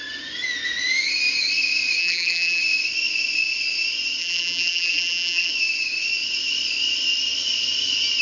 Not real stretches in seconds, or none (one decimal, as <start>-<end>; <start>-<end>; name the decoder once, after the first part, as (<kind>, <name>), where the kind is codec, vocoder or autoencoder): 2.0-2.6 (vocoder, BigVGAN v2); 4.2-5.5